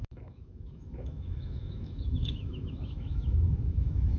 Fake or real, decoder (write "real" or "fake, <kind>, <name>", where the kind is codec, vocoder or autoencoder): fake, autoencoder, DAC-VAE